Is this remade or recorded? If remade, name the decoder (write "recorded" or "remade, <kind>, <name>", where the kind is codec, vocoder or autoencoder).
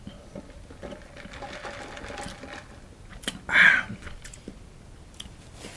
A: recorded